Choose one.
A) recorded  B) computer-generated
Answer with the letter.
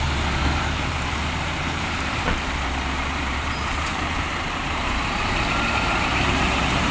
B